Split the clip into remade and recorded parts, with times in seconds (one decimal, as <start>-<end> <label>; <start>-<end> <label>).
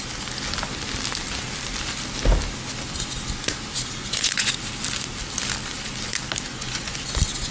0.0-4.0 recorded; 4.0-4.5 remade; 4.5-6.5 recorded; 6.5-7.1 remade; 7.1-7.5 recorded